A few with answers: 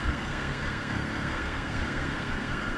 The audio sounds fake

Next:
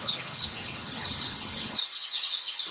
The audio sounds fake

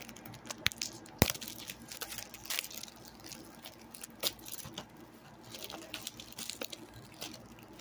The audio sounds real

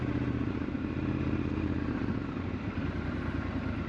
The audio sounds fake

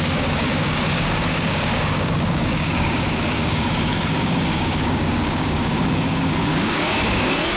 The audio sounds fake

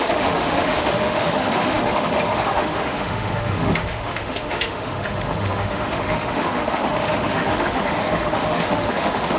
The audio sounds fake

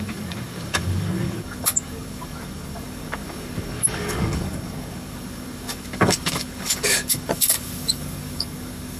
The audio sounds fake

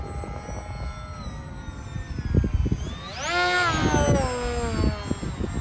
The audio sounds real